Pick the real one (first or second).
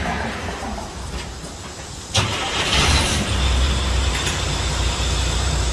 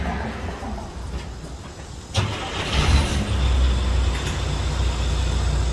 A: second